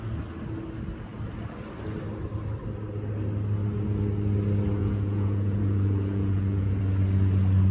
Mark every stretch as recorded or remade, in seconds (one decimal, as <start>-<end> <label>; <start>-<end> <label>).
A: 0.0-4.8 recorded; 4.8-6.8 remade; 6.8-7.7 recorded